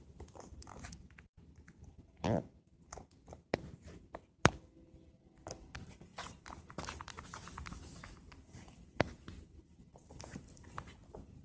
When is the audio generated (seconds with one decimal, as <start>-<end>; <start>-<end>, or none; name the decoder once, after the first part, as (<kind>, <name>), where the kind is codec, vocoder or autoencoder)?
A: none